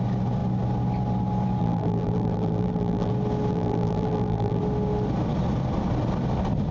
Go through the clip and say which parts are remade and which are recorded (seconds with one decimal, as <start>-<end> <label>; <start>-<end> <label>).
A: 0.0-1.6 recorded; 1.6-3.1 remade; 3.1-3.5 recorded; 3.5-4.6 remade; 4.6-6.7 recorded